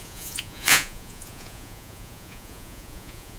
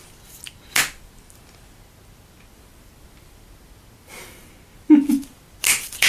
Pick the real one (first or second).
second